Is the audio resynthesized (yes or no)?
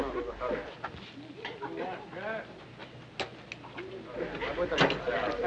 no